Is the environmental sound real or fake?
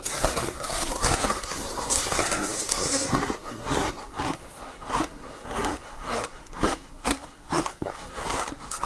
fake